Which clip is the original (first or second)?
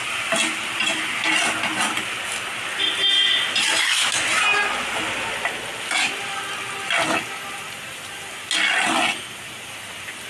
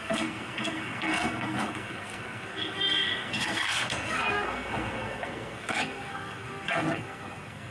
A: first